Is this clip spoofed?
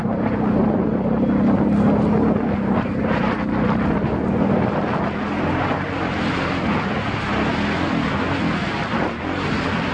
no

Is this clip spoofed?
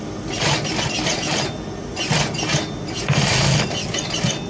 no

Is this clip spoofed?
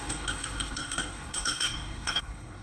yes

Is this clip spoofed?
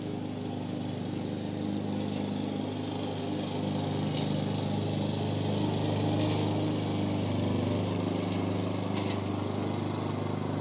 no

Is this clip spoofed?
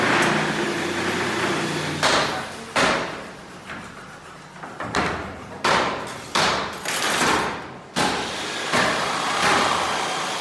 no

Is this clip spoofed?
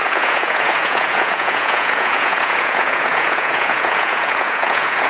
yes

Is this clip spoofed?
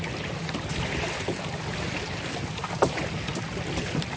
no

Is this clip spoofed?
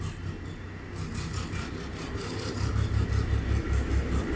no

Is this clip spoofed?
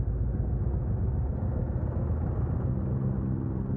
no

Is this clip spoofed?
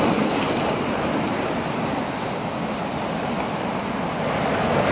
no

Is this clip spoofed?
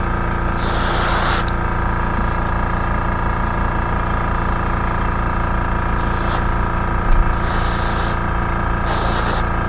no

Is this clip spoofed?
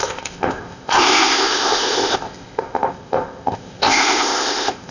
yes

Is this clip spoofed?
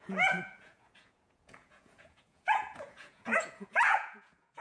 yes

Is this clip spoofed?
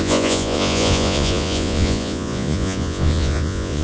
yes